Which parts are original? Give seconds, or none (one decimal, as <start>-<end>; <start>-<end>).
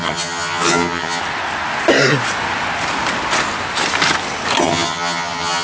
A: 1.2-4.6